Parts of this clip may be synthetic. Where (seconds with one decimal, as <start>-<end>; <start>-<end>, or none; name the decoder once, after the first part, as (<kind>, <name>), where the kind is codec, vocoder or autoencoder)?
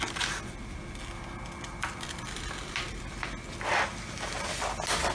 1.7-2.8 (vocoder, BigVGAN v2)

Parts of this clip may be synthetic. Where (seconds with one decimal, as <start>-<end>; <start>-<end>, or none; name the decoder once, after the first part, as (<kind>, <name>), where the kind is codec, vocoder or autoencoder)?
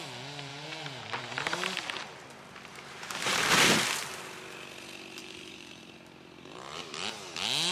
0.5-1.2 (vocoder, BigVGAN v2); 2.7-3.5; 5.2-5.8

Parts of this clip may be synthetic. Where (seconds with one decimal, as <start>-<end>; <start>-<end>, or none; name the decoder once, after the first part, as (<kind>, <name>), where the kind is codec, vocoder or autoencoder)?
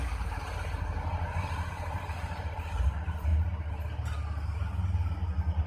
none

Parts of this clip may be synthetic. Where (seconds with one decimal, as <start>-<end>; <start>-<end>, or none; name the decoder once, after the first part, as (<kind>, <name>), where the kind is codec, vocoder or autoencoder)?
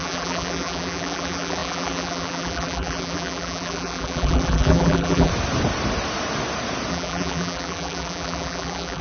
0.0-5.3 (vocoder, BigVGAN v2); 6.9-9.0